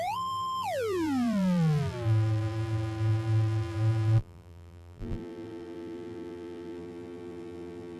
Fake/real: fake